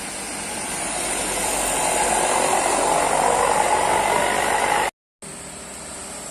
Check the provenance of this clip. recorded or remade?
recorded